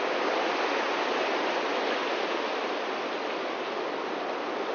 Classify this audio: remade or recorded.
recorded